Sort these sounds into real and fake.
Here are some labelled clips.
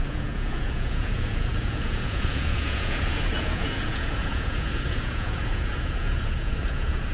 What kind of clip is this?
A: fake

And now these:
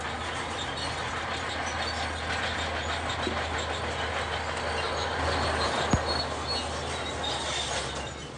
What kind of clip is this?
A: real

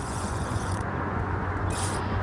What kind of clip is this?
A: fake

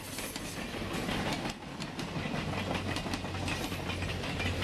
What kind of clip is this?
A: real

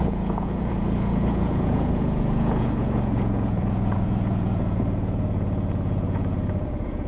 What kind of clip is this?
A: fake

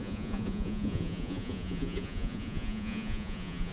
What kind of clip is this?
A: fake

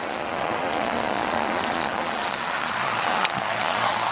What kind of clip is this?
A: fake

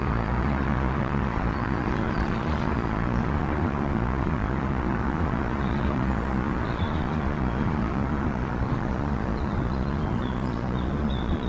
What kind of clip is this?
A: fake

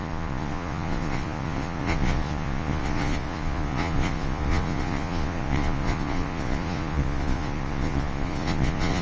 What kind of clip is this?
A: fake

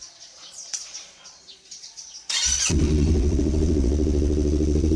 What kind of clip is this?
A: fake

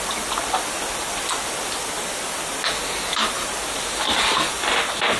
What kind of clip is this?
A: real